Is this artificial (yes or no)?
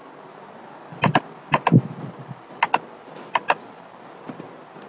no